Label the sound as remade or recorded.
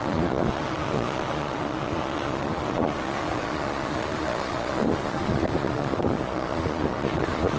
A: remade